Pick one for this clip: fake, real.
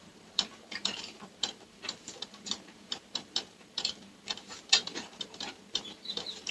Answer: fake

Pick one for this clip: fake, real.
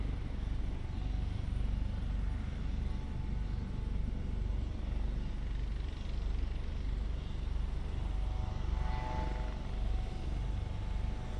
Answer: real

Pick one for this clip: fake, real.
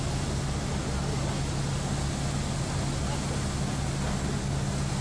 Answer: real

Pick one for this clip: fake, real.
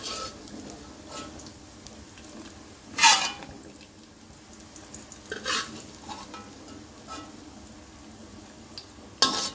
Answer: real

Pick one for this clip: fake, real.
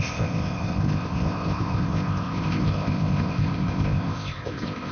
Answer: fake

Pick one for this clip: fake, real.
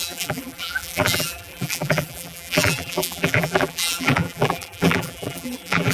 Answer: fake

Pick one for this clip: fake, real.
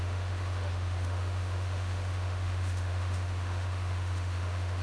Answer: fake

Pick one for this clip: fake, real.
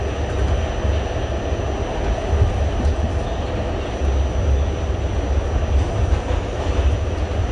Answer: real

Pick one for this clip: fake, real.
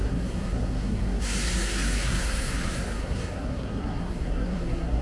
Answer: fake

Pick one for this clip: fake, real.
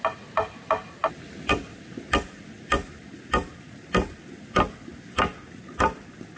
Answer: real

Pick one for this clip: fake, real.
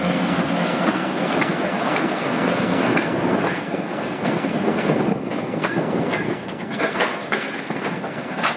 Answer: fake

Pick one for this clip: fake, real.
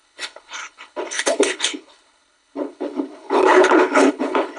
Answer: fake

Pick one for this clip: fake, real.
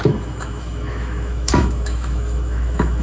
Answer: fake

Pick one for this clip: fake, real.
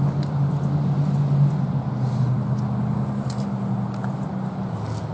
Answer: real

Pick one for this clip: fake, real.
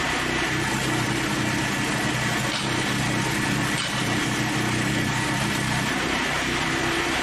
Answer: real